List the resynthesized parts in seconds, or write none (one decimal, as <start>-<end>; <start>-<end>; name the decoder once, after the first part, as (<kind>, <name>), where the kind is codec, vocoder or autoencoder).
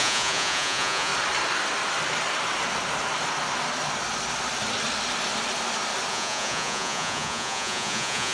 0.0-1.1 (vocoder, Vocos); 6.1-8.3